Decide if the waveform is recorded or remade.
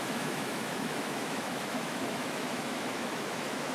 remade